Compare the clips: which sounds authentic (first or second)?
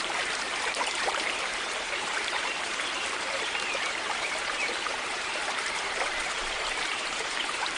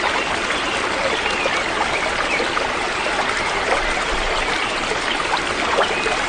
second